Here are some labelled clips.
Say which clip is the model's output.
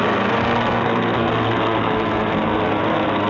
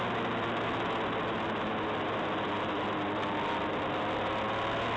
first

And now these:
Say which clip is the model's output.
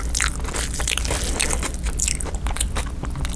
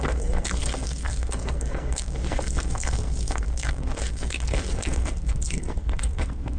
second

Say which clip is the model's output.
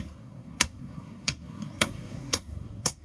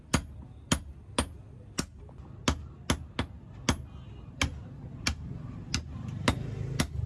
first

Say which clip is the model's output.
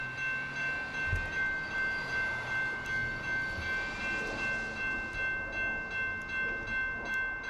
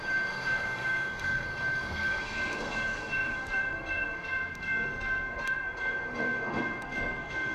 second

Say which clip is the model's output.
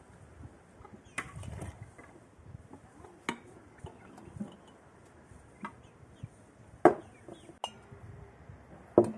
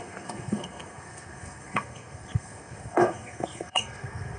second